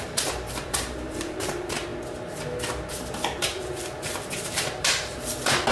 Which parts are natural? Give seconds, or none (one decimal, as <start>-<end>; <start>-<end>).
1.9-2.9